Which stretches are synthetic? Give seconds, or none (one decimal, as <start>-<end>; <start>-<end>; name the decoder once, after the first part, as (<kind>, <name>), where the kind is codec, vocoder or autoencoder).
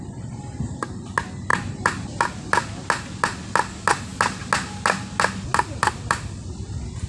none